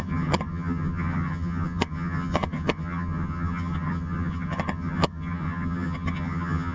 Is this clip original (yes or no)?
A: no